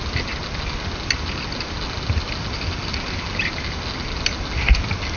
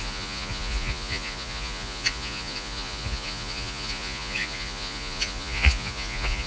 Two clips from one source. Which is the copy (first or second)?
second